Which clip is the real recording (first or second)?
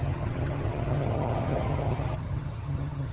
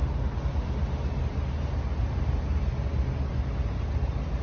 second